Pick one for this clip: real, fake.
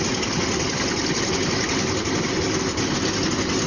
real